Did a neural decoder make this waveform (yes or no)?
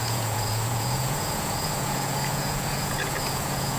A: yes